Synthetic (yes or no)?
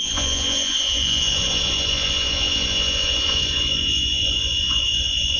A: yes